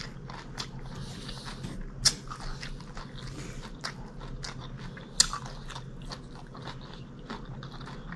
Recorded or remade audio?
recorded